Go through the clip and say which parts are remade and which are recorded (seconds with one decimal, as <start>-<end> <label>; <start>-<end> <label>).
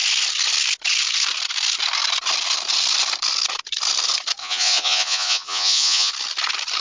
0.0-4.4 recorded; 4.4-6.1 remade; 6.1-6.8 recorded